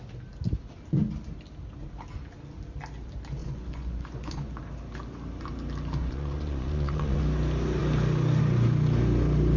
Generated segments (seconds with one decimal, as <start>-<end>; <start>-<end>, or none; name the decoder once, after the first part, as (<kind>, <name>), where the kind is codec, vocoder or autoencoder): 3.4-4.6 (vocoder, Vocos); 6.0-7.2